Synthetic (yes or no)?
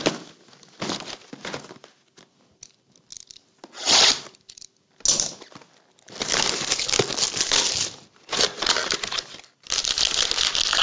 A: no